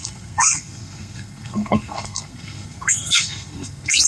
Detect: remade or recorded remade